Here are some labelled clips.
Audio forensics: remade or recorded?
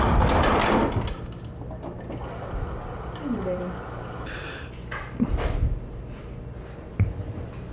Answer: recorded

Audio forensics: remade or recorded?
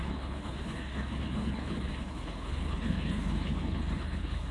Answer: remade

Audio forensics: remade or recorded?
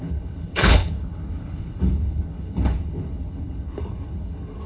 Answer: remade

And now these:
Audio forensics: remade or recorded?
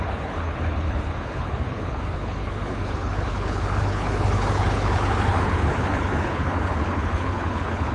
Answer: remade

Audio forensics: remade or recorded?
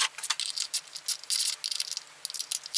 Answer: recorded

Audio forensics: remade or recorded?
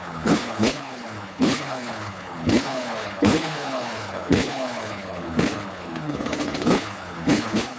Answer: remade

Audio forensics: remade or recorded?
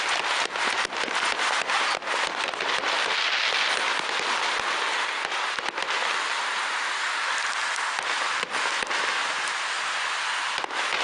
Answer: recorded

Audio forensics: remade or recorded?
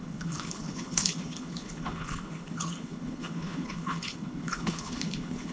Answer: remade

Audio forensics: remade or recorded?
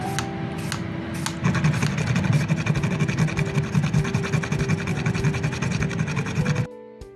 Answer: recorded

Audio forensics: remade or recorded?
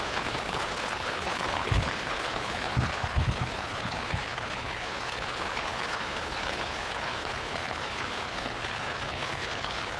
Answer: remade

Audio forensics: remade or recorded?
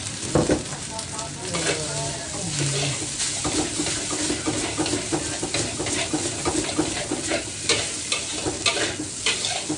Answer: recorded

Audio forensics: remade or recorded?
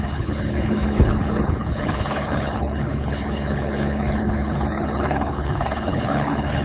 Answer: remade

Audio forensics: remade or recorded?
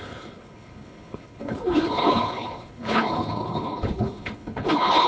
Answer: remade